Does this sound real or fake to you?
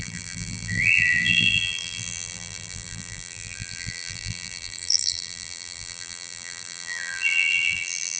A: fake